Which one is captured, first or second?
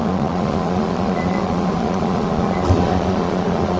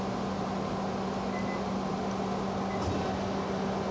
second